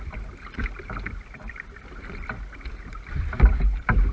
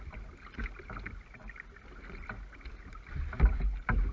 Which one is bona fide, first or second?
second